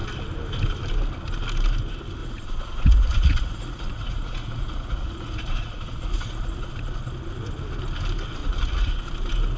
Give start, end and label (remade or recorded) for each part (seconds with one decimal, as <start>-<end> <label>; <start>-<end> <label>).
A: 0.0-2.2 recorded; 2.2-6.7 remade; 6.7-8.4 recorded; 8.4-9.0 remade; 9.0-9.6 recorded